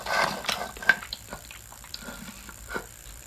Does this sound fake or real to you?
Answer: fake